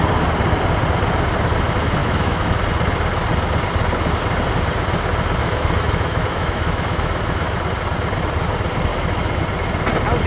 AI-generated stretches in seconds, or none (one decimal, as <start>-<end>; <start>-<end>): 2.0-2.5; 5.4-7.6; 8.9-9.4